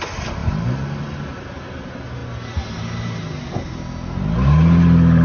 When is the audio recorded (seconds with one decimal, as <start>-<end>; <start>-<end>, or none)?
0.0-5.2